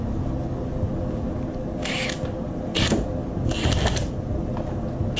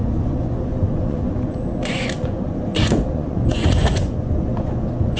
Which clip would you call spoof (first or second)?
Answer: second